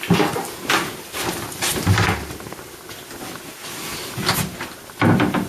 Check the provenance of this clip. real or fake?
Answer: real